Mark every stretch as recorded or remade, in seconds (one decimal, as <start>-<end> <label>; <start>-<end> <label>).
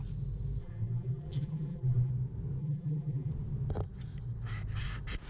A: 0.0-0.6 recorded; 0.6-2.1 remade; 2.1-2.6 recorded; 2.6-3.3 remade; 3.3-5.3 recorded